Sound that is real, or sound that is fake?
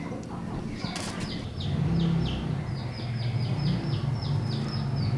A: real